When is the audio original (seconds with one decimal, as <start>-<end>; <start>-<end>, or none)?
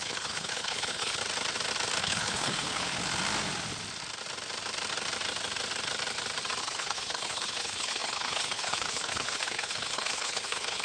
1.2-2.0; 3.0-6.6